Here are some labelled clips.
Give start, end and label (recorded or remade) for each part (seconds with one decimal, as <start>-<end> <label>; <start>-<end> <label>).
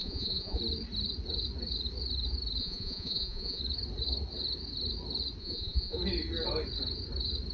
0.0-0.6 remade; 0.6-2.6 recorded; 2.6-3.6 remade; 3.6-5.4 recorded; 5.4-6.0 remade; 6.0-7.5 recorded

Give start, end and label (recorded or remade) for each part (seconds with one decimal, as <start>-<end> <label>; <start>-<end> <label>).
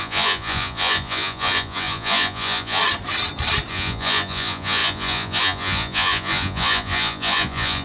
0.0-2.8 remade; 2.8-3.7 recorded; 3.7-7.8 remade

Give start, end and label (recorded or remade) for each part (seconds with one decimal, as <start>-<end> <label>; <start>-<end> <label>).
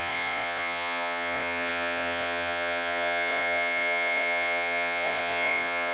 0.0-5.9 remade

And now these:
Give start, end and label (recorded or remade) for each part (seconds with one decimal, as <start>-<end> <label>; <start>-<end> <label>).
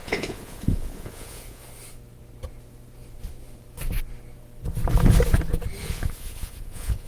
0.0-1.6 remade; 1.6-5.8 recorded; 5.8-7.1 remade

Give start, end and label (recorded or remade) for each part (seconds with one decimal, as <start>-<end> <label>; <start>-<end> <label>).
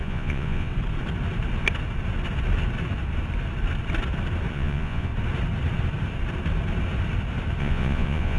0.0-0.7 remade; 0.7-4.5 recorded; 4.5-5.1 remade; 5.1-7.6 recorded; 7.6-8.4 remade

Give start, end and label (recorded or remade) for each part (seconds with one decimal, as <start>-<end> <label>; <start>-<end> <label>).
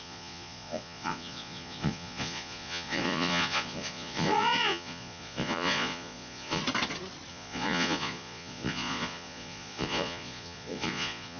0.0-6.6 remade; 6.6-7.3 recorded; 7.3-11.4 remade